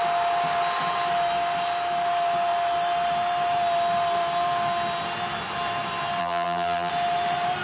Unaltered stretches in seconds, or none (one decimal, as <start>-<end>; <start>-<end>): 0.0-6.2; 6.9-7.6